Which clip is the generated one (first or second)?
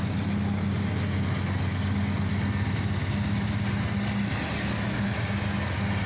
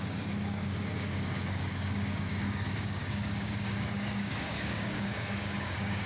second